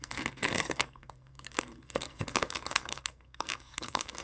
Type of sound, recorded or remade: remade